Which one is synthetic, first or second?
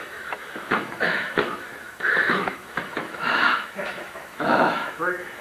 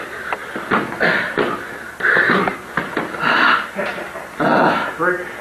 first